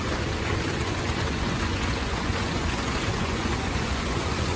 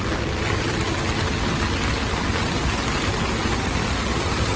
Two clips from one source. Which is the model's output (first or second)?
first